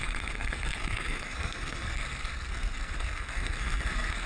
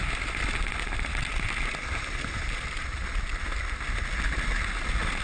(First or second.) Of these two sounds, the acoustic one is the second